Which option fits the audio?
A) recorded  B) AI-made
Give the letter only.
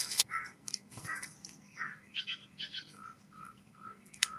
B